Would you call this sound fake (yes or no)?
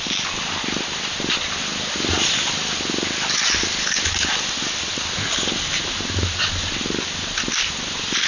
no